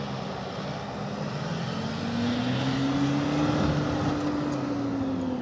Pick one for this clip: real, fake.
real